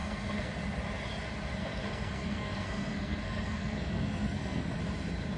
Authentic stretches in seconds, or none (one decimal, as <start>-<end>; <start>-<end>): 0.5-1.6; 4.8-5.4